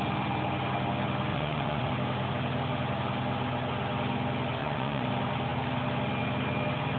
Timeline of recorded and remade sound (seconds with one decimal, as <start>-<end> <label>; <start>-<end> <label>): 0.0-1.3 recorded; 1.3-1.9 remade; 1.9-4.6 recorded; 4.6-5.1 remade; 5.1-7.0 recorded